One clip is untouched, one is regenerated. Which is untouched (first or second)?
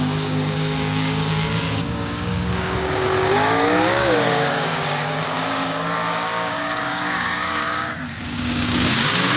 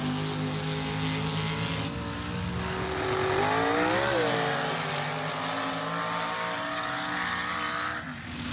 second